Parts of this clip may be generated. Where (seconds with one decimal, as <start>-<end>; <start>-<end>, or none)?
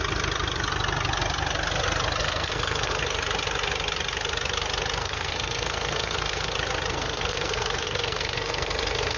2.2-3.0; 5.0-6.5; 6.9-9.2